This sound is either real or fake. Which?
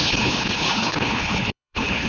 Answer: fake